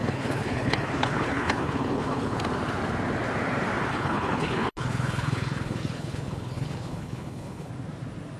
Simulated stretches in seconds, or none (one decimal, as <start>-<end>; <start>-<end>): 0.0-2.4; 3.9-7.7